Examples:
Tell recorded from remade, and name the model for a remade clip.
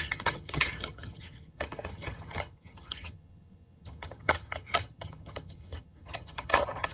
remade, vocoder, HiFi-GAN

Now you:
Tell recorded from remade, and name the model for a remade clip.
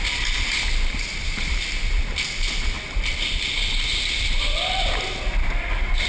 recorded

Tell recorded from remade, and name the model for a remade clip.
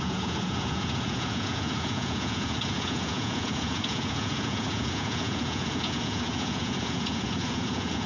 remade, vocoder, Vocos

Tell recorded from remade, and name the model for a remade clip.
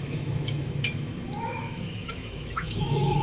remade, autoencoder, DAC-VAE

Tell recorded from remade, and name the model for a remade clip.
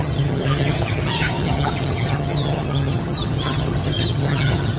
remade, vocoder, HiFi-GAN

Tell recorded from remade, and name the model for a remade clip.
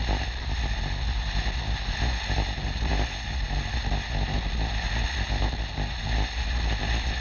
recorded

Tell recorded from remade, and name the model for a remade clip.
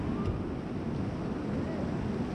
recorded